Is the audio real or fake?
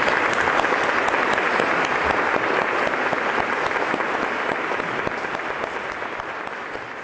real